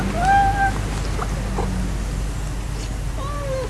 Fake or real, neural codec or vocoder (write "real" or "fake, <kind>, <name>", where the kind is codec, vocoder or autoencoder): real